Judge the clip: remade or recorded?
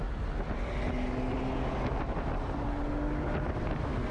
recorded